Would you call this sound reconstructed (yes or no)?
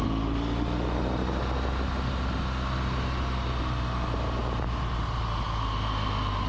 no